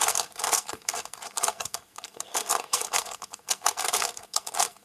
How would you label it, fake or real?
fake